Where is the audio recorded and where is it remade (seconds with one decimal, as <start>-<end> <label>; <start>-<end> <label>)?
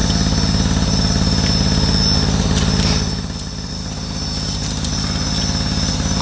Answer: 0.0-6.2 recorded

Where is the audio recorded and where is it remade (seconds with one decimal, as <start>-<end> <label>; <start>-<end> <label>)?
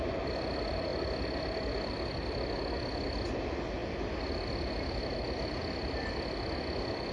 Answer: 0.0-7.1 recorded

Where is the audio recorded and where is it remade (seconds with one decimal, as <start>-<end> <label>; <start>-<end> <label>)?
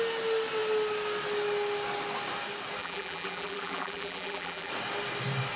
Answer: 0.0-2.8 recorded; 2.8-4.7 remade; 4.7-5.5 recorded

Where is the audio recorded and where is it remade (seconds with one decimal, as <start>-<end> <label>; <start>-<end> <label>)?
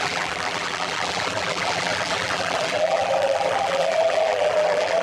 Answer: 0.0-5.0 remade